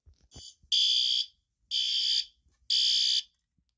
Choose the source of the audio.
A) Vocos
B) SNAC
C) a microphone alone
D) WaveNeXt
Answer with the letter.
C